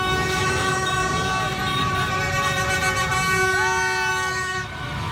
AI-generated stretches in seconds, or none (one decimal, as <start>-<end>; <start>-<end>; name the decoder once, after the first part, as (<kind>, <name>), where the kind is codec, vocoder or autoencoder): 0.0-1.0 (autoencoder, DAC-VAE); 4.1-5.1